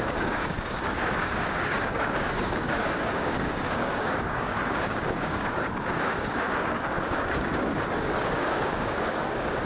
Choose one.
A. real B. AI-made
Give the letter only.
B